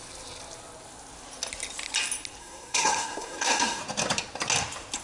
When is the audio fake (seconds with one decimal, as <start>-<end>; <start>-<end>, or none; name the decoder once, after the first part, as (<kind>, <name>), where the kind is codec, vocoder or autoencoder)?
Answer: 2.4-3.8 (codec, SNAC)